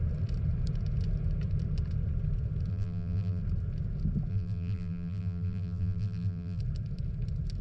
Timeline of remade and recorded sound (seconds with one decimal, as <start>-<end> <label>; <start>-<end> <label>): 0.0-2.7 recorded; 2.7-3.4 remade; 3.4-4.3 recorded; 4.3-6.6 remade; 6.6-7.6 recorded